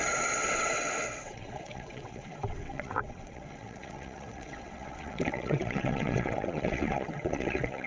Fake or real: fake